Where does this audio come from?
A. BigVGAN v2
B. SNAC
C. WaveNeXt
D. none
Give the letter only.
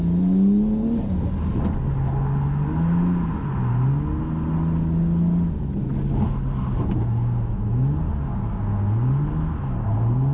D